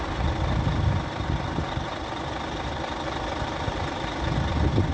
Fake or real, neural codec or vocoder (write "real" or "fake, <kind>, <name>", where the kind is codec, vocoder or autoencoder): real